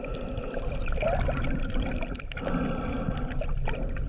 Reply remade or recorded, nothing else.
recorded